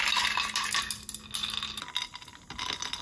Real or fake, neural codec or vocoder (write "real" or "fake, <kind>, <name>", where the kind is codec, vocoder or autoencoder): real